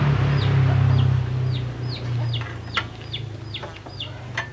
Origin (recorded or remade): recorded